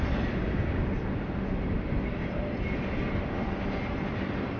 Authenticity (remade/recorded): recorded